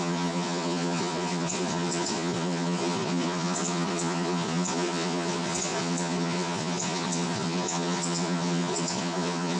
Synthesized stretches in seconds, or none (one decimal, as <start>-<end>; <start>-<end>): 0.0-9.6